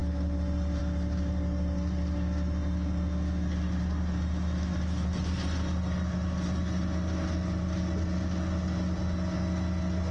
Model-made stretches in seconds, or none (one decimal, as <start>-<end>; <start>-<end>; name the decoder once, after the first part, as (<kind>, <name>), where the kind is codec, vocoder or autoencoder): none

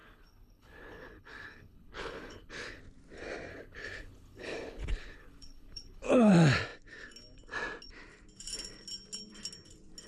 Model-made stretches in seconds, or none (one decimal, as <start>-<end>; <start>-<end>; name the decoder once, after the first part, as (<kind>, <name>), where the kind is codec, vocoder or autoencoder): 0.0-2.8 (codec, HILCodec); 3.5-6.3

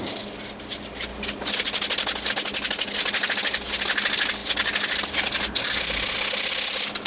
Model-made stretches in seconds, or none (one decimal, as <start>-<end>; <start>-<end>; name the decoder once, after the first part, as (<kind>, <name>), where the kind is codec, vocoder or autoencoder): none

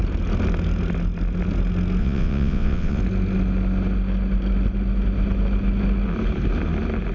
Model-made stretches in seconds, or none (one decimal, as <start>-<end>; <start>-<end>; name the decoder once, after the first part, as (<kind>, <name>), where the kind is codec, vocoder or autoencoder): 2.0-3.0 (vocoder, WaveNeXt)

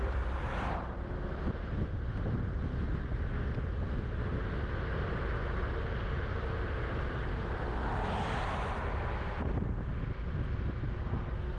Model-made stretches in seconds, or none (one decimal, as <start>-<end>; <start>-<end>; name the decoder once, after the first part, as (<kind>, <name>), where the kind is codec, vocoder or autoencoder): none